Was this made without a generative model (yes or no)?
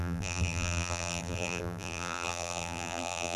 no